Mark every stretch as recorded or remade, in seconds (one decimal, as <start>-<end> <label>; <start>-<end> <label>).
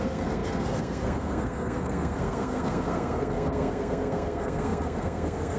0.0-5.6 remade